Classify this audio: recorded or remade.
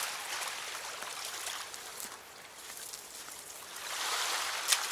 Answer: recorded